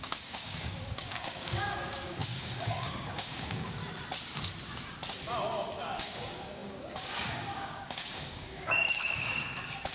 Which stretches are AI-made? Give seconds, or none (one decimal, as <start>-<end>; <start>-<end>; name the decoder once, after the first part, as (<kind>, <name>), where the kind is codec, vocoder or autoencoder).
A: 0.0-3.8 (codec, DAC); 5.7-9.9